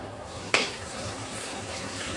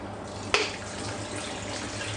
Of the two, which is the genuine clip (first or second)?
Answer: second